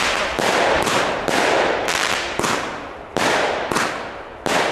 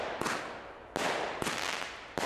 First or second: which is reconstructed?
first